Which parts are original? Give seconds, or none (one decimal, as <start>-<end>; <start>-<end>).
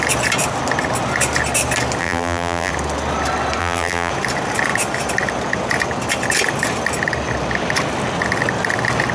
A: 0.0-2.0; 2.7-3.6; 4.1-9.1